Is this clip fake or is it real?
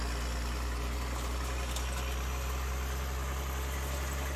real